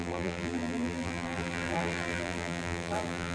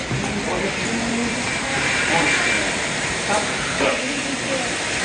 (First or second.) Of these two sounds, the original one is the second